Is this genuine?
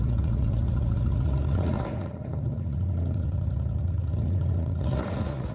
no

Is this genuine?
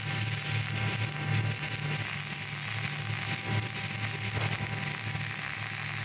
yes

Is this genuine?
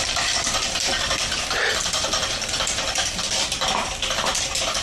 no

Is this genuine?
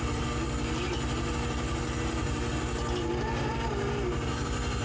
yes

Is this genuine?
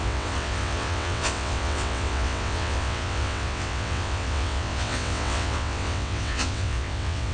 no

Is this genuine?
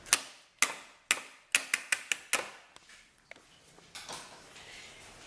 yes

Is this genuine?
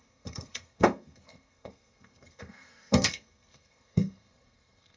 no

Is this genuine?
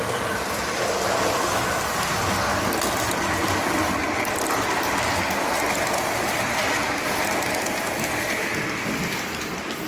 yes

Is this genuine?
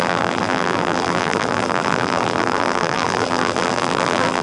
no